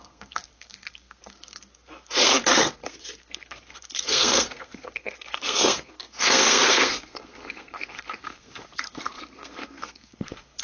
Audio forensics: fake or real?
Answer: fake